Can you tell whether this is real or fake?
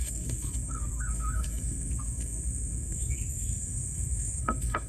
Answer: fake